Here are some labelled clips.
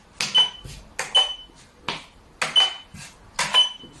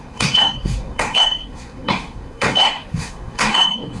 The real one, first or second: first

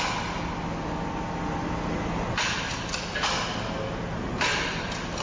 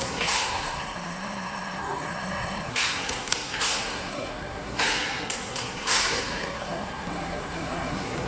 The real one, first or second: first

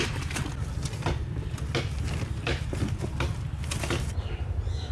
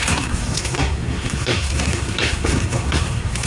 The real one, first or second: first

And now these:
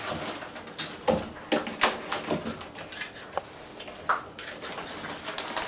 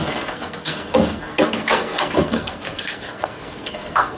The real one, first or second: first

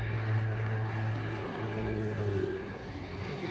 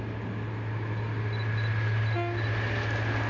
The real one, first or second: second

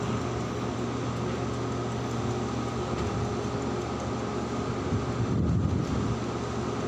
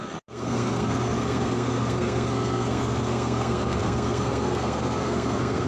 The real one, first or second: first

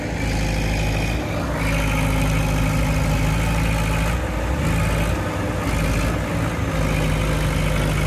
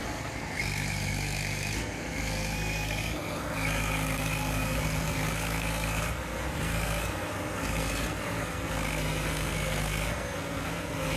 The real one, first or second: first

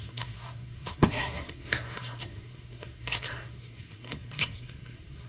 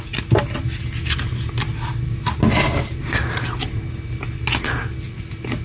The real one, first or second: second